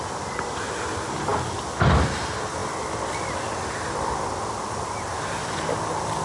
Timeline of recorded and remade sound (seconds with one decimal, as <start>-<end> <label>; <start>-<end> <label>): 0.0-6.2 recorded